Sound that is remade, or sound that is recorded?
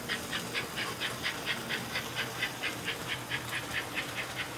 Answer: recorded